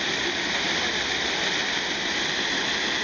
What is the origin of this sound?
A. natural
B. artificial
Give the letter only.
A